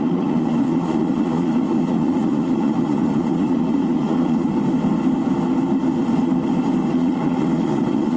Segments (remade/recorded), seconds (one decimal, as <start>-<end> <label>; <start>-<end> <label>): 0.0-4.5 remade; 4.5-6.9 recorded; 6.9-8.2 remade